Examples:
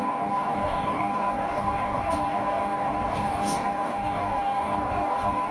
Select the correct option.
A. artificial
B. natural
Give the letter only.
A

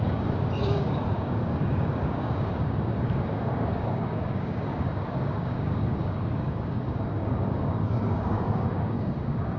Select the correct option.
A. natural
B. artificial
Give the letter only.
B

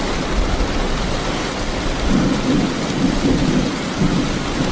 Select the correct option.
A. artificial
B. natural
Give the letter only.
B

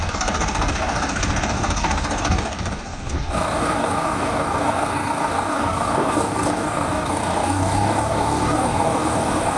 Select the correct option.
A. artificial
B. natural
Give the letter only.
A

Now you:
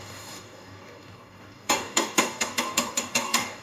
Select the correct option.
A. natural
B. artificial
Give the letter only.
B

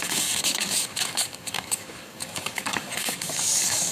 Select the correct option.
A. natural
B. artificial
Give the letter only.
B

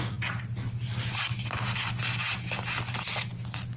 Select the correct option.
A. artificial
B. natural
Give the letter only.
B